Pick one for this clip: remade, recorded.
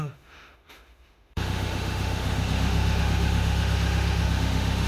remade